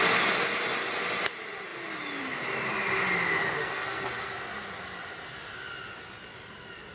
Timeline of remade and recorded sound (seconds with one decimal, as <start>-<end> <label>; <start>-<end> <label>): 0.0-3.6 recorded; 3.6-4.3 remade; 4.3-6.9 recorded